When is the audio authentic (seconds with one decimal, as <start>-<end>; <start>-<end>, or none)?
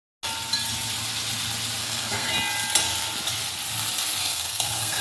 0.0-1.8; 2.3-4.2